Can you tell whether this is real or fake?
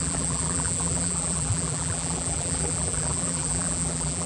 fake